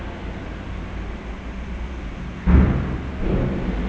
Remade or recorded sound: recorded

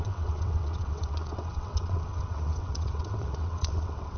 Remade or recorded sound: remade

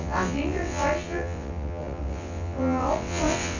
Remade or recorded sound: remade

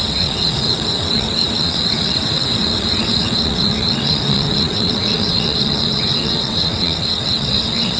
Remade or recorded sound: remade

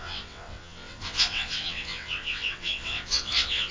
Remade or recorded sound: remade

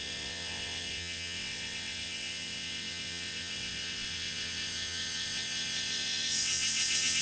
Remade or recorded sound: remade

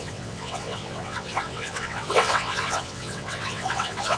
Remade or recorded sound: remade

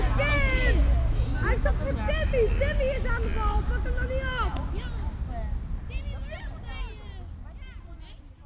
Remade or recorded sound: recorded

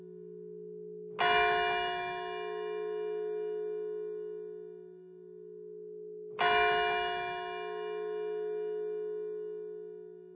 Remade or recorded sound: recorded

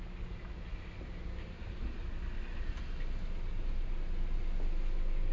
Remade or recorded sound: recorded